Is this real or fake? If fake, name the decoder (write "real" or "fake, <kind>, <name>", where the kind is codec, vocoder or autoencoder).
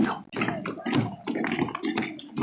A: real